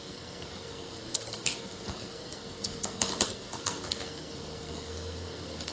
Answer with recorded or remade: remade